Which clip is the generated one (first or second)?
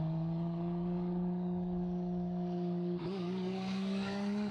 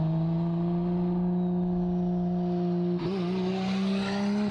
first